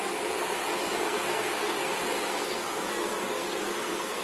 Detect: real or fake fake